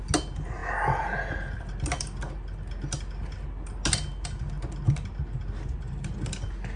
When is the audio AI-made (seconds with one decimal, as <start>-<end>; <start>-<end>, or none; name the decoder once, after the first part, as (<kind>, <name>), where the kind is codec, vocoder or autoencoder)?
none